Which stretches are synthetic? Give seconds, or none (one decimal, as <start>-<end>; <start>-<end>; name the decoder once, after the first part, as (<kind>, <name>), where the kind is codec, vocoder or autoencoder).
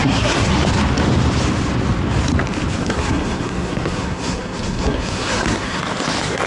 0.0-0.5 (codec, SNAC); 2.8-5.8